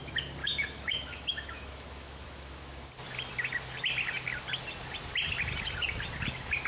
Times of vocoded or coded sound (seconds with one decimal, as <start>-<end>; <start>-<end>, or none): 0.4-2.9